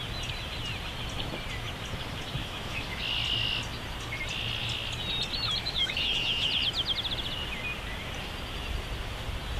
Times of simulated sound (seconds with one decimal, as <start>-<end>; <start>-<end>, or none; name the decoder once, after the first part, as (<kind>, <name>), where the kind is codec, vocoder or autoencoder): 2.4-3.0 (autoencoder, DAC-VAE); 5.6-6.5